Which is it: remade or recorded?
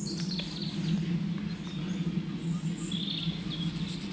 recorded